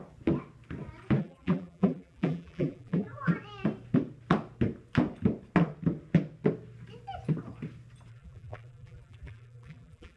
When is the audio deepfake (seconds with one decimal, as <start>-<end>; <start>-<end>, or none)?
1.2-3.3; 8.1-10.2